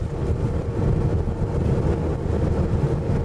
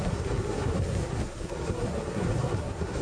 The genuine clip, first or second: first